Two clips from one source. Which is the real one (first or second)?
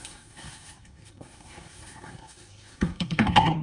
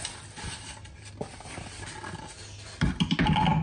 second